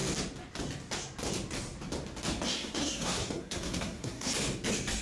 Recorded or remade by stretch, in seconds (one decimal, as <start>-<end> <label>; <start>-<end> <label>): 0.0-2.5 recorded; 2.5-4.3 remade; 4.3-5.0 recorded